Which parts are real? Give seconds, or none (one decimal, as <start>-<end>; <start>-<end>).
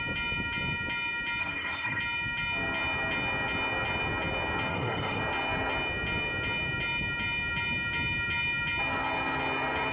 0.0-1.4; 2.0-4.7; 5.2-9.9